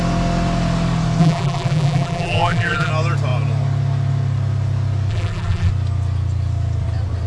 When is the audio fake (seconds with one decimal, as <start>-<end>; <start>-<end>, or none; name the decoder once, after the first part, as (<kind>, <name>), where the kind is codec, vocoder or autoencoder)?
1.2-2.9 (vocoder, BigVGAN v2); 5.1-5.7